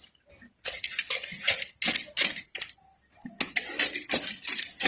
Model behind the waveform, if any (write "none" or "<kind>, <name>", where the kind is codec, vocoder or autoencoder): none